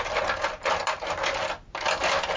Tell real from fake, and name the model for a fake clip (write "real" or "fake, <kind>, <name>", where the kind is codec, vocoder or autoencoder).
real